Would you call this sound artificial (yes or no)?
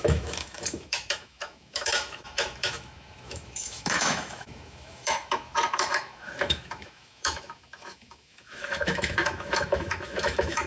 yes